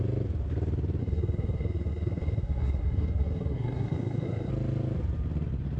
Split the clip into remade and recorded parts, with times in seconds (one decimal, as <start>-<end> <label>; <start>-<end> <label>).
0.0-1.0 recorded; 1.0-4.5 remade; 4.5-5.8 recorded